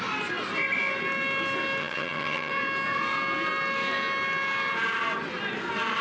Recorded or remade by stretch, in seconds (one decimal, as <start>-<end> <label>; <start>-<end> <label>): 0.0-1.8 recorded; 1.8-2.5 remade; 2.5-6.0 recorded